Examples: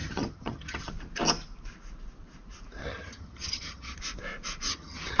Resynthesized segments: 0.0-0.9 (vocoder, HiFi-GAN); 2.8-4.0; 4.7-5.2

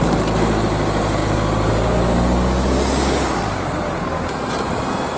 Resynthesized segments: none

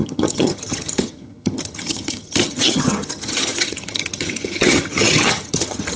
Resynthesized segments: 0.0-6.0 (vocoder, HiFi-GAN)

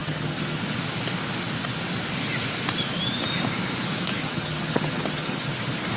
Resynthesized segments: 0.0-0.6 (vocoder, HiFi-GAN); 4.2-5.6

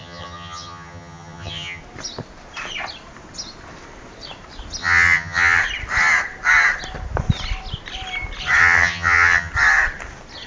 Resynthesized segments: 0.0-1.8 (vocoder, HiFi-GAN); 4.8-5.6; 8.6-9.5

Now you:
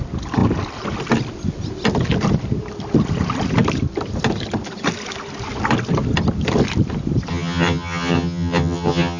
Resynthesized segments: 7.3-9.2 (vocoder, HiFi-GAN)